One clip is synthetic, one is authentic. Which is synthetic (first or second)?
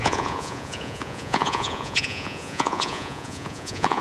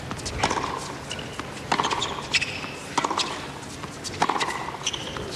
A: first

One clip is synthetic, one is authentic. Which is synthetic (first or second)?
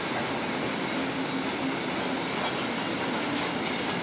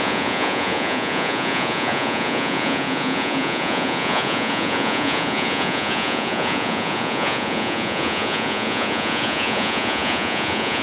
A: second